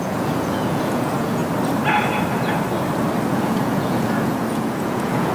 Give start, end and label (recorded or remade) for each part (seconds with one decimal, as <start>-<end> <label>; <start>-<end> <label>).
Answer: 0.0-1.4 remade; 1.4-3.3 recorded; 3.3-5.3 remade